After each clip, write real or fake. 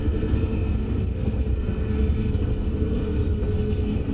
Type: fake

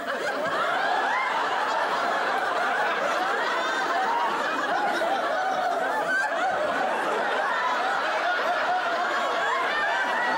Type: real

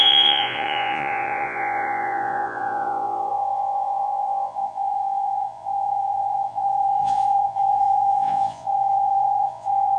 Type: fake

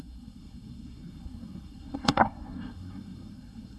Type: fake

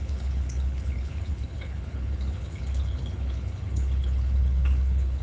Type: fake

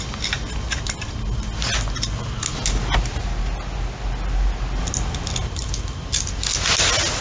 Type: real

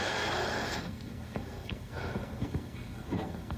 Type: fake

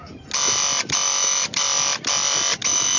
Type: real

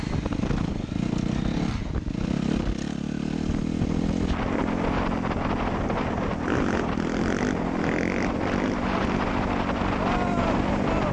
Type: real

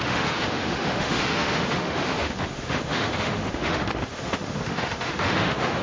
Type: fake